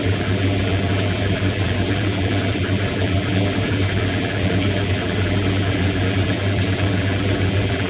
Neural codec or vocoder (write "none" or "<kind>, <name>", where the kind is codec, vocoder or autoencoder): vocoder, BigVGAN v2